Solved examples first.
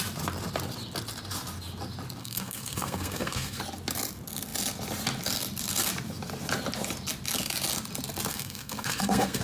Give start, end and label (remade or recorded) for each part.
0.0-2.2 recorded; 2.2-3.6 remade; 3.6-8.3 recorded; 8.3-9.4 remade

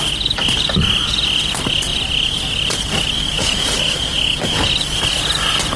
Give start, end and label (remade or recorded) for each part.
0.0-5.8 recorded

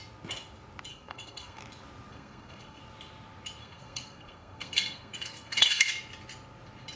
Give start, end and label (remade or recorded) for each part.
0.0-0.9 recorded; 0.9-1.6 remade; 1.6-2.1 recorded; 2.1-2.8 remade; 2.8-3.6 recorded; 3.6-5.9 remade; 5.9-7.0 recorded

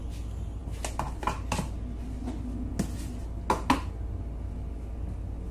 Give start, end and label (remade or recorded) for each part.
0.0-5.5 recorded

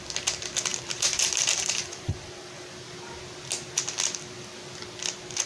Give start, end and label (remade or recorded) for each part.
0.0-0.7 recorded; 0.7-2.1 remade; 2.1-5.5 recorded